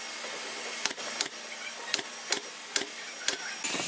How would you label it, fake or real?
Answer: real